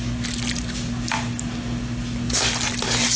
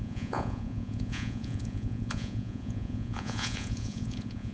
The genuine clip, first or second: first